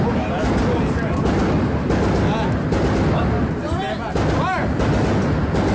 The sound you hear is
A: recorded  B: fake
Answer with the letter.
A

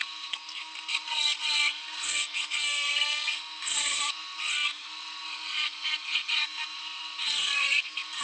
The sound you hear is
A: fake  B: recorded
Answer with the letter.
A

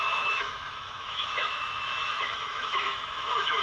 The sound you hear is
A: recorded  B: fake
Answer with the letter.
B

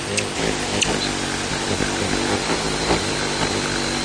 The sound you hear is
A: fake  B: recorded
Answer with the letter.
B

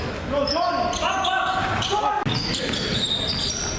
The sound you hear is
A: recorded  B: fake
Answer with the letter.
A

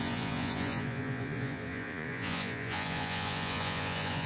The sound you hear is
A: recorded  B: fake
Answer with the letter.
B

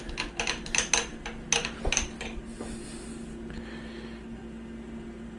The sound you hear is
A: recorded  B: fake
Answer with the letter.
A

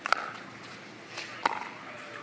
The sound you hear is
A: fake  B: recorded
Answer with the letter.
B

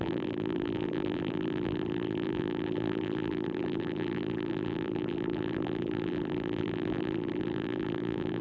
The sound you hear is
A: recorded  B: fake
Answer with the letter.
B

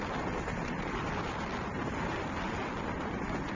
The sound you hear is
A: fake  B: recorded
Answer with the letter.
B